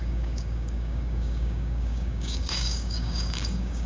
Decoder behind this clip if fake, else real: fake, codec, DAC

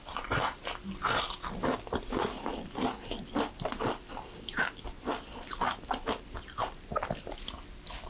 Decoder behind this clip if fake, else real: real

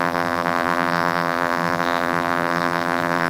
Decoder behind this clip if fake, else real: fake, vocoder, BigVGAN v2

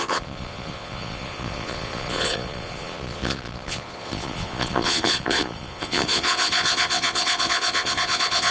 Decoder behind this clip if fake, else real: fake, vocoder, Vocos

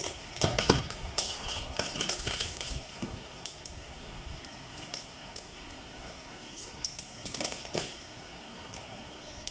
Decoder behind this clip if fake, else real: fake, codec, SNAC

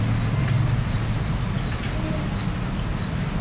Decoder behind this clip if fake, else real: real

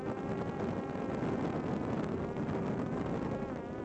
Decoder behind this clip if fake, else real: real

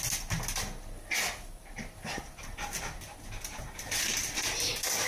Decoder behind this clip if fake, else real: real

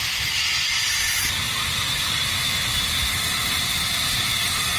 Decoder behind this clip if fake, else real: real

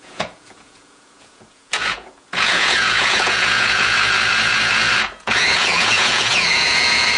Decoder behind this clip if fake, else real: fake, vocoder, Vocos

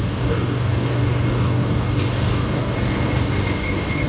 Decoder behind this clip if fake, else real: fake, codec, DAC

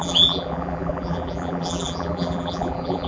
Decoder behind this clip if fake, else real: fake, vocoder, BigVGAN v2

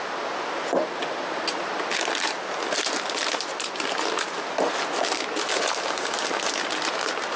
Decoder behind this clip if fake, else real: real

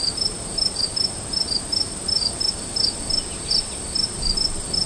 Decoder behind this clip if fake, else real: real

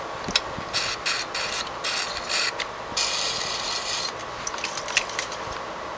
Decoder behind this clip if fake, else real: real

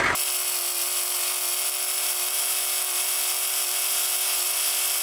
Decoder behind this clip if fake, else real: real